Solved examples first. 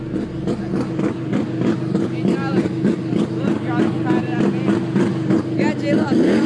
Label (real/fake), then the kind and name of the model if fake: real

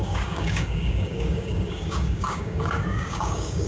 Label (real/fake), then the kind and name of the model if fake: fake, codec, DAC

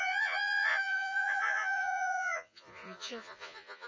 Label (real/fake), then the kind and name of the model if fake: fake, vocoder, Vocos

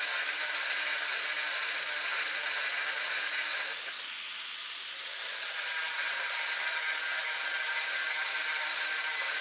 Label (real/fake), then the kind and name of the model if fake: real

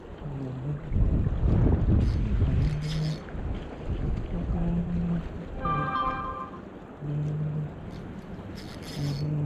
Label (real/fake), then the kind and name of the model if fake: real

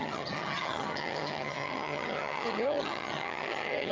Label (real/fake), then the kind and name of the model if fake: fake, vocoder, HiFi-GAN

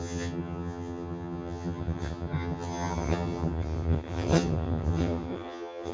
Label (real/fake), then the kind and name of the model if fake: fake, vocoder, HiFi-GAN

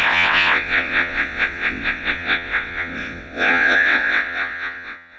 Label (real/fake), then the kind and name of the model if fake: fake, vocoder, WaveNeXt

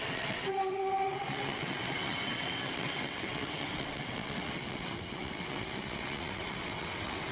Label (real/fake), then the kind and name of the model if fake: fake, vocoder, WaveNeXt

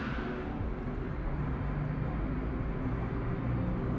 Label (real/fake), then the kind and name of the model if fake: real